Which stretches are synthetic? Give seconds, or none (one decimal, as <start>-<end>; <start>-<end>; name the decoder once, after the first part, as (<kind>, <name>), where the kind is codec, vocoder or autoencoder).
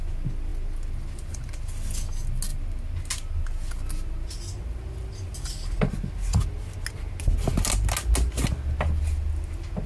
none